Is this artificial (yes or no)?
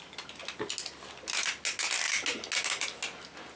no